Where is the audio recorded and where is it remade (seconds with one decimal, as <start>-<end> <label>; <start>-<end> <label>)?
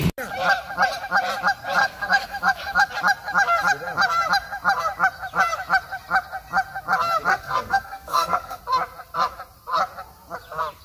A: 0.0-1.8 recorded; 1.8-2.9 remade; 2.9-7.3 recorded; 7.3-8.6 remade; 8.6-10.8 recorded